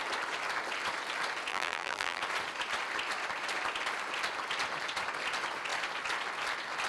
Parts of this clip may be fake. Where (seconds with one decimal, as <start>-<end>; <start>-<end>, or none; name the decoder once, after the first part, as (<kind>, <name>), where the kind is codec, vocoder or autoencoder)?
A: 1.5-2.2 (vocoder, BigVGAN v2)